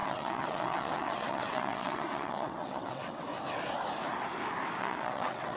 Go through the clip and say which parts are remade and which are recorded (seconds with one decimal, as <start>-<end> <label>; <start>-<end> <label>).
0.0-3.3 remade; 3.3-4.8 recorded; 4.8-5.6 remade